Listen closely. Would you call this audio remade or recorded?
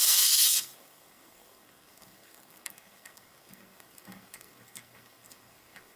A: remade